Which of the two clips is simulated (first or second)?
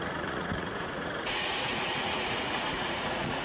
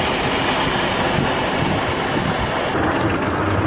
first